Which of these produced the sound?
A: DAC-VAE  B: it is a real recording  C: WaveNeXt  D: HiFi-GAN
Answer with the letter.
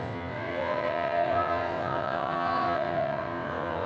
C